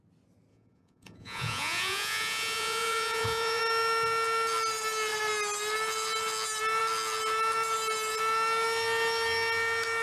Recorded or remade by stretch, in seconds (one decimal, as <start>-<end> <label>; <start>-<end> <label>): 0.0-0.5 recorded; 0.5-3.6 remade; 3.6-10.0 recorded